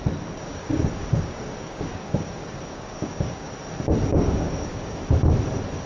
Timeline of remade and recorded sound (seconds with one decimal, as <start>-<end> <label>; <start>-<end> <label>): 0.0-0.4 recorded; 0.4-3.5 remade; 3.5-4.1 recorded; 4.1-5.0 remade; 5.0-5.9 recorded